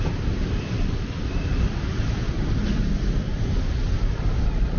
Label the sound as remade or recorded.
remade